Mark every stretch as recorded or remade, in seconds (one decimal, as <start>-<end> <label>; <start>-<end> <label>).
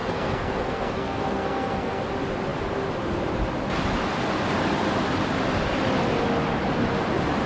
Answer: 0.0-2.0 remade; 2.0-7.5 recorded